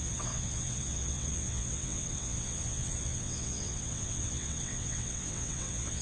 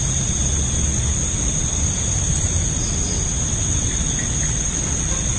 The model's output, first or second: first